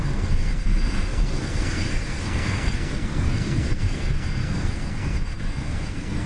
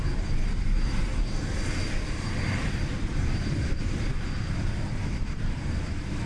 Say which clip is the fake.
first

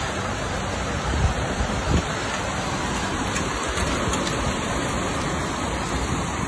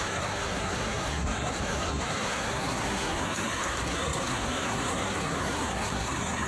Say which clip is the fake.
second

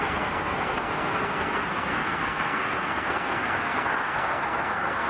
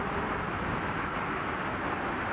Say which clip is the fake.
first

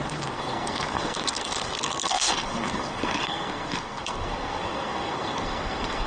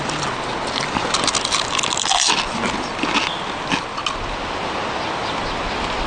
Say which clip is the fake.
first